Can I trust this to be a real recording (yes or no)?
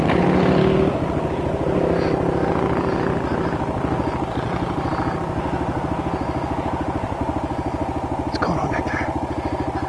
yes